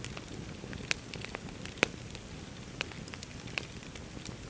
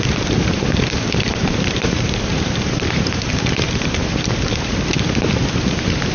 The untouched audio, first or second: first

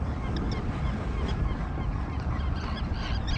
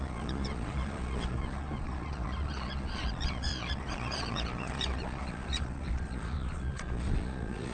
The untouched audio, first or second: first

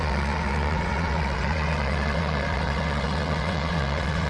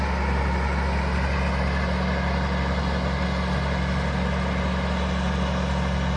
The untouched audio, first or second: second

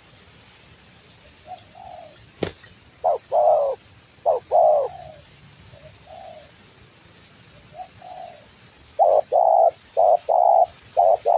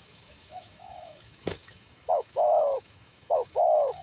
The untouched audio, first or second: first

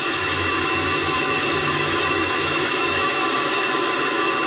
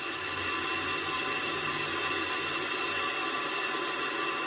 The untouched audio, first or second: second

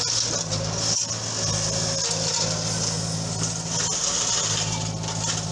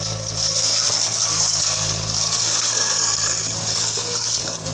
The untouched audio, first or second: first